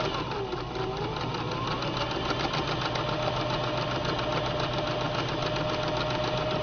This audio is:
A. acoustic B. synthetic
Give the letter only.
A